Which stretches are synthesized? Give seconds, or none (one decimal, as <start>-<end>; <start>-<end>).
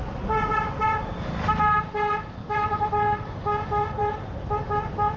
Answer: 2.4-2.9